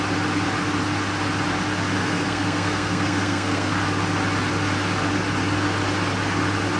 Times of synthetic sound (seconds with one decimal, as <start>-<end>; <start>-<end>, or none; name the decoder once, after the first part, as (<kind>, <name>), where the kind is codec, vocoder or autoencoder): 2.0-3.7 (codec, SNAC)